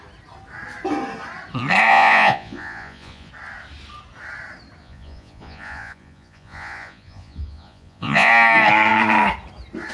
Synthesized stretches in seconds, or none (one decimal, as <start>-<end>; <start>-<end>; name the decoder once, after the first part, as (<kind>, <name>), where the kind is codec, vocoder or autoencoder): 1.9-3.3 (vocoder, Vocos); 4.8-8.3